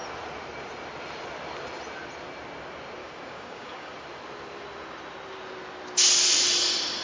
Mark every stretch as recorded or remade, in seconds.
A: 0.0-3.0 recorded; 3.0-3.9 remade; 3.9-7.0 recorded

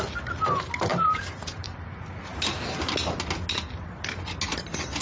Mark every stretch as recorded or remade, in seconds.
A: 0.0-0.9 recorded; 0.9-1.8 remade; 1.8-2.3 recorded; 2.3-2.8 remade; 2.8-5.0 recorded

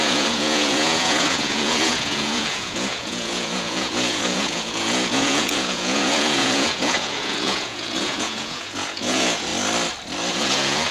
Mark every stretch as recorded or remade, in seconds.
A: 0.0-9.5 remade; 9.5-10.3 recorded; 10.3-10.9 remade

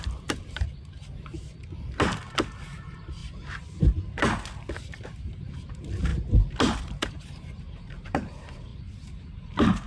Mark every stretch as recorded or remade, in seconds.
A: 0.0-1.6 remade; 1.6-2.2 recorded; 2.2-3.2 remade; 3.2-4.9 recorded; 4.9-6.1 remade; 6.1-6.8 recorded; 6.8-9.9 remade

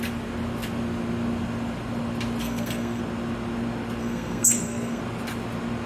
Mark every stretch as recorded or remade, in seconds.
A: 0.0-2.4 recorded; 2.4-3.0 remade; 3.0-4.0 recorded; 4.0-5.0 remade; 5.0-5.9 recorded

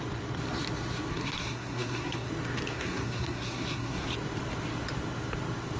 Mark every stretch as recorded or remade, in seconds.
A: 0.0-1.1 recorded; 1.1-2.3 remade; 2.3-2.7 recorded; 2.7-4.1 remade; 4.1-5.8 recorded

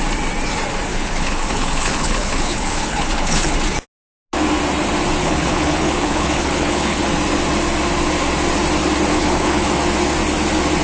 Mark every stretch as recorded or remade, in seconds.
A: 0.0-0.9 recorded; 0.9-3.5 remade; 3.5-5.2 recorded; 5.2-7.0 remade; 7.0-9.1 recorded; 9.1-9.7 remade; 9.7-10.8 recorded